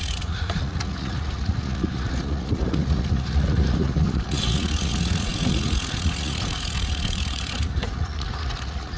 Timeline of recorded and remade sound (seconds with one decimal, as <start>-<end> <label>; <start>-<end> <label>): 0.0-9.0 remade